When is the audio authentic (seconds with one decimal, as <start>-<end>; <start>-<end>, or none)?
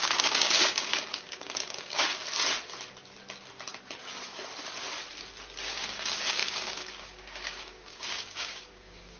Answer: 2.1-5.6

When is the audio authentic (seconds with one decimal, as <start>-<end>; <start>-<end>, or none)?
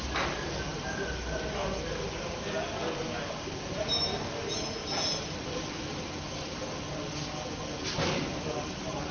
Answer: 0.0-2.8; 4.3-9.1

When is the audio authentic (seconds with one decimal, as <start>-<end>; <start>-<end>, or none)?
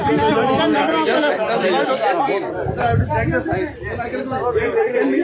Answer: 0.0-5.2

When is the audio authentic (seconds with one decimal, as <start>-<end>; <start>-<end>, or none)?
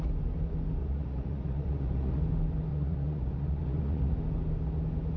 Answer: 0.0-0.8; 2.2-2.7; 4.1-5.2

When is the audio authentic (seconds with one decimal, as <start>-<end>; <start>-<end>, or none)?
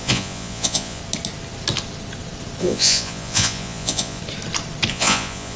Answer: 1.0-2.6; 4.2-4.9